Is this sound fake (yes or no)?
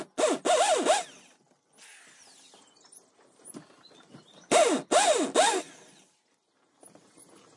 no